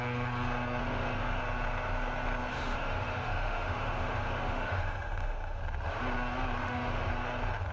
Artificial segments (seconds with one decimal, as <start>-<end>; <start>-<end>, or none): 0.8-1.4; 2.5-5.6; 6.6-7.1